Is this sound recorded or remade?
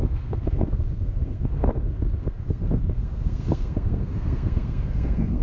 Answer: remade